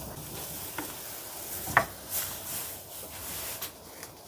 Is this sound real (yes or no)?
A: yes